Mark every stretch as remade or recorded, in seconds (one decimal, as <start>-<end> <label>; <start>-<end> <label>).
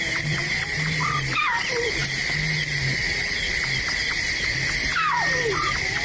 0.0-2.0 remade; 2.0-4.1 recorded; 4.1-6.0 remade